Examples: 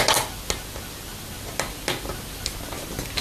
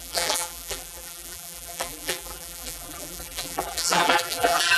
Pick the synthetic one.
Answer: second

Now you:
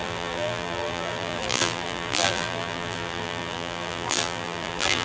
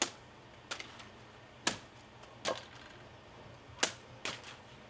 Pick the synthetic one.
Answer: first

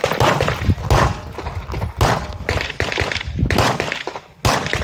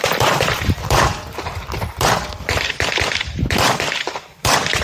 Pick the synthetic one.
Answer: second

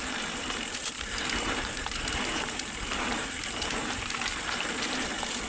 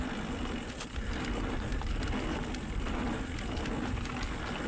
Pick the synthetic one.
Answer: first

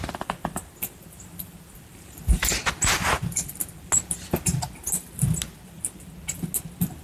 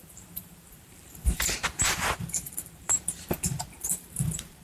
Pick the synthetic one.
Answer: second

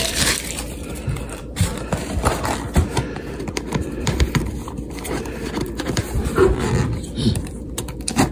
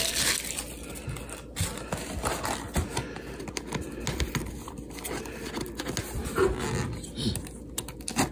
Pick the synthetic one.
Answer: first